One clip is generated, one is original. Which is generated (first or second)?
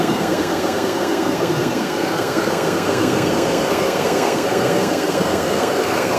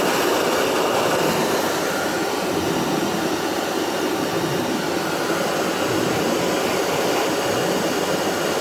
first